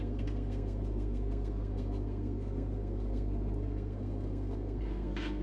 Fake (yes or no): yes